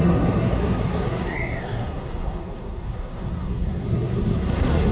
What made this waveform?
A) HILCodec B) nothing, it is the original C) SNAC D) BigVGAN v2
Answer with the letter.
C